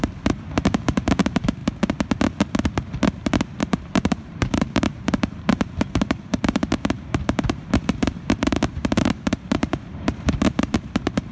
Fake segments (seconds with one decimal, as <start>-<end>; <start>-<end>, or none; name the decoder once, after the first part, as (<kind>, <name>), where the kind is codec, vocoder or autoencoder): 0.0-1.6 (vocoder, BigVGAN v2); 3.6-11.3